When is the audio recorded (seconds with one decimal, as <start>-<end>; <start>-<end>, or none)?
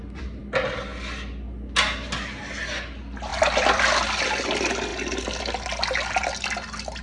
0.0-3.3; 4.2-7.0